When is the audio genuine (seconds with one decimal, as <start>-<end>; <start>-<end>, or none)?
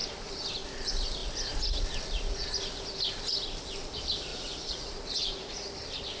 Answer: 0.0-4.3; 5.7-6.2